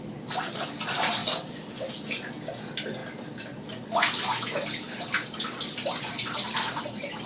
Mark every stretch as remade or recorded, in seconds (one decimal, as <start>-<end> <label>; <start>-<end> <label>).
0.0-7.3 recorded